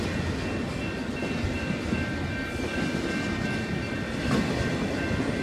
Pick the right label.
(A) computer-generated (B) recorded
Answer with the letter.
B